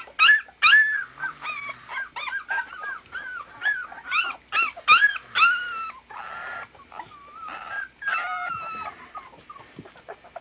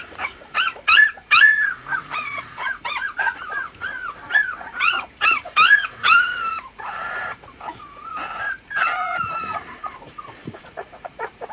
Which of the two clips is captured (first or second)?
first